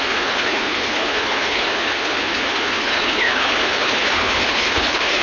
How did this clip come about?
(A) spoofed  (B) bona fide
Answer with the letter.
A